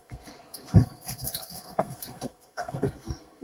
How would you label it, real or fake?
fake